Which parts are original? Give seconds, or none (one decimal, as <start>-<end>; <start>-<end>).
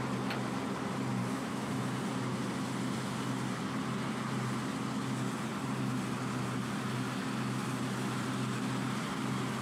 0.0-1.2; 2.0-9.6